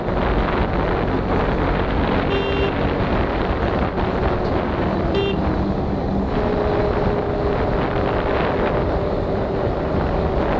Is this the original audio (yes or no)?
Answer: yes